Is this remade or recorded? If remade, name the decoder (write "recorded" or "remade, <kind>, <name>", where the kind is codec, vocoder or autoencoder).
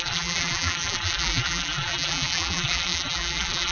remade, vocoder, BigVGAN v2